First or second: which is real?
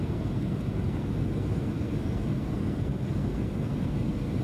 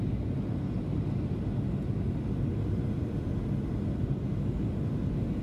second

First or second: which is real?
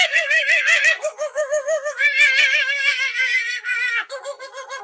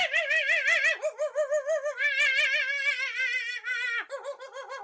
second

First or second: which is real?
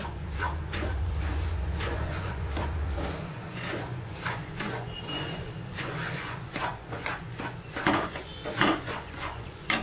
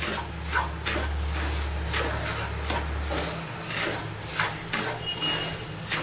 second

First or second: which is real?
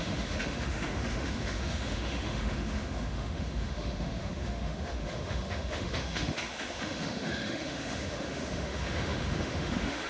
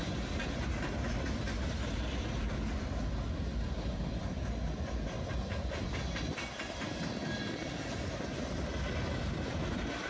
second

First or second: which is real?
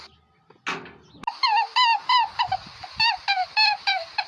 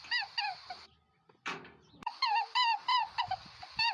first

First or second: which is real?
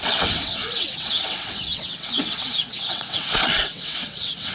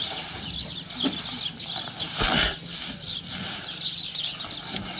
second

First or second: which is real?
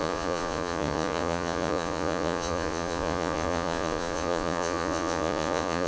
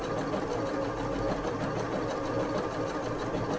second